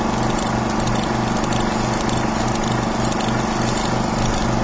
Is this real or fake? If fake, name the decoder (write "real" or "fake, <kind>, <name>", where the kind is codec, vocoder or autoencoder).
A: real